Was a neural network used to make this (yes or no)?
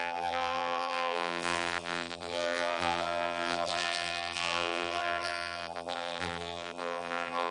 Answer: yes